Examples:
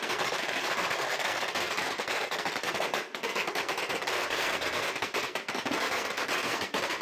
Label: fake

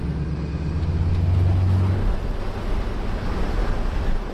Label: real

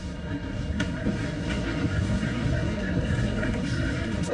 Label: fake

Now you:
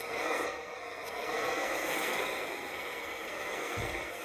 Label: fake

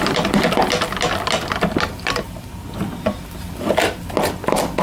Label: real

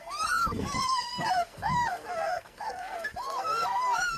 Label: fake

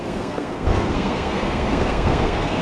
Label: fake